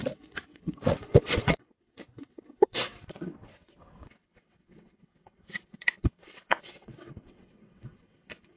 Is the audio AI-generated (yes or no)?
yes